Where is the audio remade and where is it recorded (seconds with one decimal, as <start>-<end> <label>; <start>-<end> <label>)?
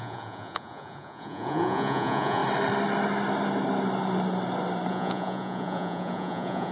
0.0-2.4 remade; 2.4-4.9 recorded; 4.9-6.7 remade